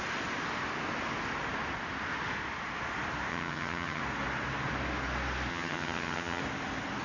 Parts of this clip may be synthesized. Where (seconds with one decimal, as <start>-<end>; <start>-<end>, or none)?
3.3-4.0; 5.5-6.4